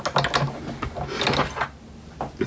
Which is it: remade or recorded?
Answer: recorded